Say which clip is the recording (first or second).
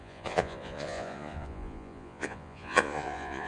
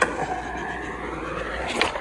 second